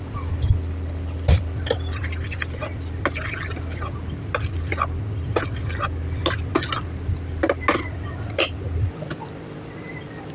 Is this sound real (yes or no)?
yes